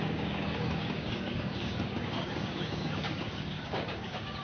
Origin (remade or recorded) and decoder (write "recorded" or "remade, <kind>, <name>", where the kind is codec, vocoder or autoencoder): remade, codec, DAC